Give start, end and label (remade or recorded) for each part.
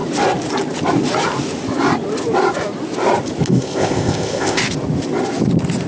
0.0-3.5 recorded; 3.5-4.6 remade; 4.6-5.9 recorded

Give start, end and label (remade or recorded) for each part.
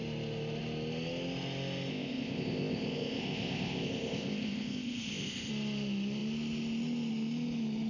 0.0-1.9 recorded; 1.9-5.5 remade; 5.5-7.9 recorded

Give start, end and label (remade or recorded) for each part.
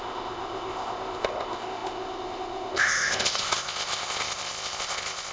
0.0-5.3 remade